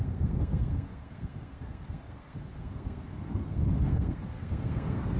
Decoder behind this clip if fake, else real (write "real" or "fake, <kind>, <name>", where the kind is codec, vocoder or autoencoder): fake, codec, SNAC